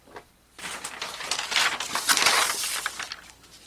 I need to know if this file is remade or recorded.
recorded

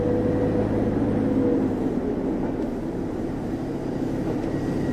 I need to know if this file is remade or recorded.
recorded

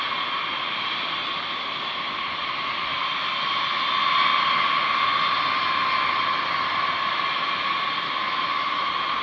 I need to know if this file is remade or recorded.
remade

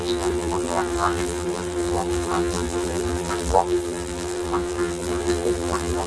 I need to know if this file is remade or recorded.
remade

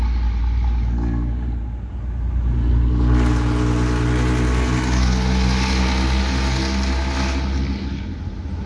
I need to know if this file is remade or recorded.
recorded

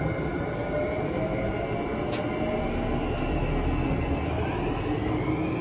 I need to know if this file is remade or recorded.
recorded